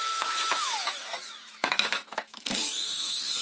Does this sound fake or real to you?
fake